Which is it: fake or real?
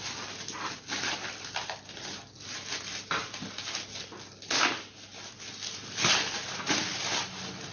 real